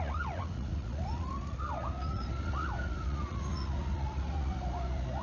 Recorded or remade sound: remade